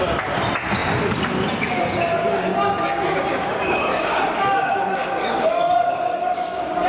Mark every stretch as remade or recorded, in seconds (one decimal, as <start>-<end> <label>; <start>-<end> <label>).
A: 0.0-2.5 recorded; 2.5-6.9 remade